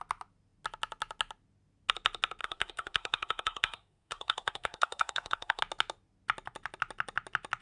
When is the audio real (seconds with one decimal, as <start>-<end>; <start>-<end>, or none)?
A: 0.0-2.4; 5.6-7.6